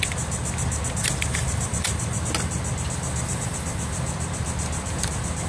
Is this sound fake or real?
real